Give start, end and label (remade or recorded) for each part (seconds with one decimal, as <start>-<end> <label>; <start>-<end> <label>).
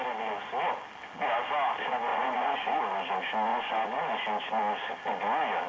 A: 0.0-2.1 recorded; 2.1-2.8 remade; 2.8-3.5 recorded; 3.5-4.1 remade; 4.1-5.7 recorded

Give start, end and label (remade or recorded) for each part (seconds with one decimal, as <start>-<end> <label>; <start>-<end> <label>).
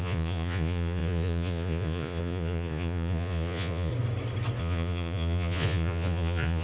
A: 0.0-3.9 remade; 3.9-4.6 recorded; 4.6-6.6 remade